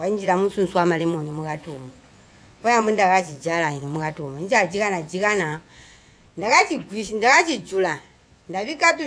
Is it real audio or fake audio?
fake